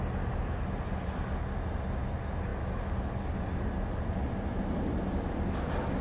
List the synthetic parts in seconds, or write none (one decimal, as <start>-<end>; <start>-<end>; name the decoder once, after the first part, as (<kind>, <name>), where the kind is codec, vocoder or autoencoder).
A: none